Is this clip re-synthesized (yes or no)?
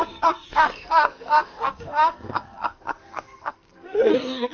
yes